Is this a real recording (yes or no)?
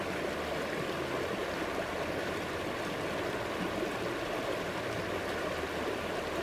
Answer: yes